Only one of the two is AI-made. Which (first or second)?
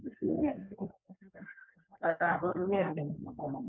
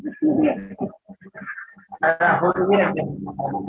first